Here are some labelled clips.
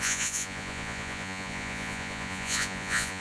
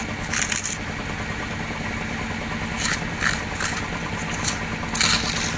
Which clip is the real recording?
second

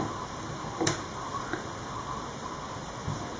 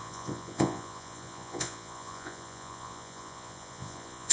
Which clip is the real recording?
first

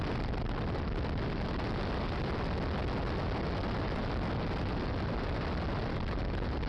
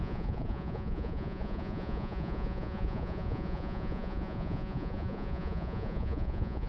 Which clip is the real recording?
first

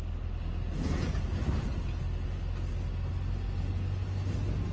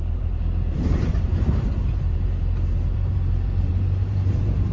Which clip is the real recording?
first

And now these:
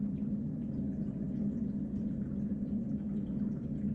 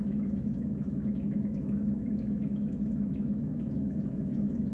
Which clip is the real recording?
first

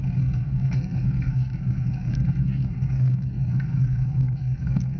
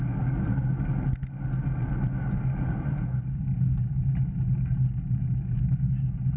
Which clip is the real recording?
second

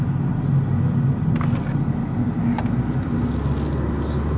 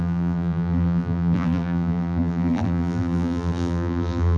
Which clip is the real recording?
first